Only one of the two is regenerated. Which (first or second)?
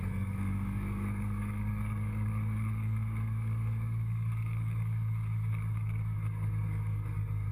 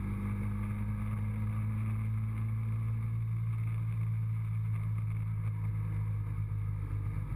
first